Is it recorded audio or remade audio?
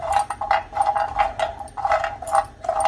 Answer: recorded